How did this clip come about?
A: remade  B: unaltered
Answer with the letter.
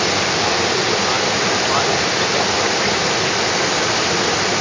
B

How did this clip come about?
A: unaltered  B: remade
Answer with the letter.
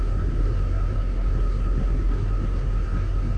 B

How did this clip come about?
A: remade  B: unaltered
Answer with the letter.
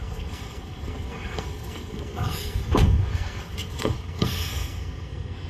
A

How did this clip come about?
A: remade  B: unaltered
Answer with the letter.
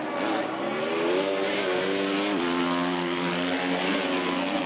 B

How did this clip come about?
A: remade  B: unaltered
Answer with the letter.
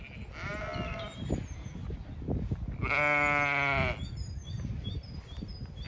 B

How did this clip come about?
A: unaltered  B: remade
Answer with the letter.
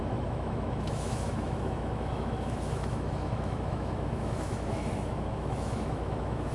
B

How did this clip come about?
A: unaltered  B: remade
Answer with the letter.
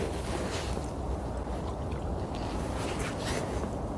A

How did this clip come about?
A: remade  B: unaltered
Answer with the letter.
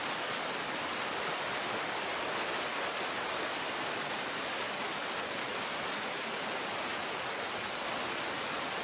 B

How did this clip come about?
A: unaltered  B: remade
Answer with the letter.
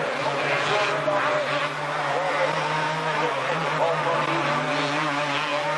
A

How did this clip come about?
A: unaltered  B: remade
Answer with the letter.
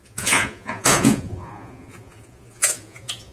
B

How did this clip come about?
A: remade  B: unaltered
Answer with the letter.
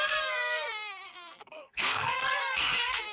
A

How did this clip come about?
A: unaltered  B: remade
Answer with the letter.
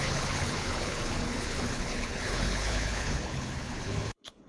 B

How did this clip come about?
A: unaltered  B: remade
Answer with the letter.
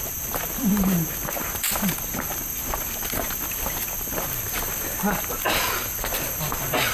A